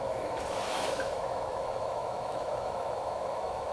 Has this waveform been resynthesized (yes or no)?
yes